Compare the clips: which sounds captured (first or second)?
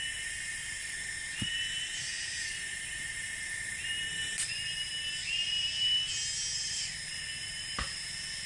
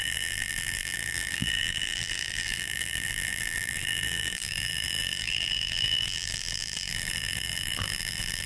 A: first